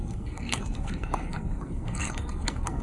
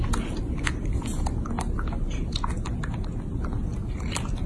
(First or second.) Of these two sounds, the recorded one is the second